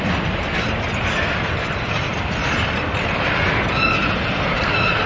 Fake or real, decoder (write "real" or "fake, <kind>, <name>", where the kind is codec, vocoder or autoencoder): real